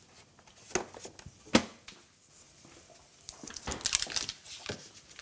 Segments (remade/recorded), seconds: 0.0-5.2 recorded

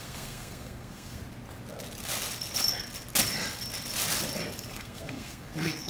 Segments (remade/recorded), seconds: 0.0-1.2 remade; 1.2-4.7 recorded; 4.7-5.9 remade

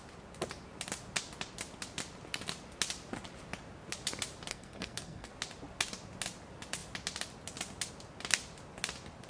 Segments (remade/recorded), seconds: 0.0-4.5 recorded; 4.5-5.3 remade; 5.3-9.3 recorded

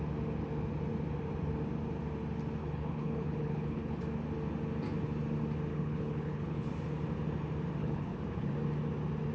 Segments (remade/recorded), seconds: 0.0-2.6 recorded; 2.6-4.0 remade; 4.0-5.7 recorded; 5.7-6.7 remade; 6.7-7.8 recorded; 7.8-8.5 remade; 8.5-9.3 recorded

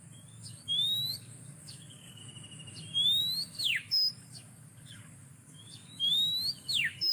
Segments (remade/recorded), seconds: 0.0-2.2 remade; 2.2-3.2 recorded; 3.2-7.1 remade

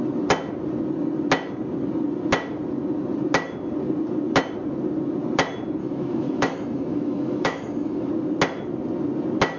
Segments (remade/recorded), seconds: 0.0-5.8 recorded; 5.8-8.1 remade; 8.1-9.6 recorded

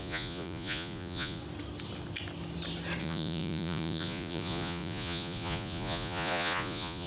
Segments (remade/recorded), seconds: 0.0-1.4 remade; 1.4-3.0 recorded; 3.0-7.1 remade

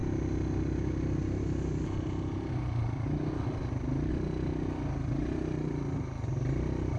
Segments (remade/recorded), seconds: 0.0-7.0 recorded